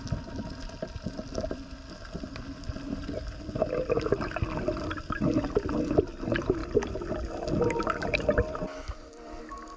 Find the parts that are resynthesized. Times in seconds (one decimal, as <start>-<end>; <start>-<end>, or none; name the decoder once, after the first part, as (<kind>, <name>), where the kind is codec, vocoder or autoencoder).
6.6-9.4 (vocoder, BigVGAN v2)